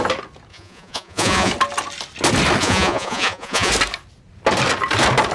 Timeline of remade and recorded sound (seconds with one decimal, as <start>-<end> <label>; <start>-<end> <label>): 0.0-0.5 recorded; 0.5-1.5 remade; 1.5-2.6 recorded; 2.6-3.7 remade; 3.7-5.3 recorded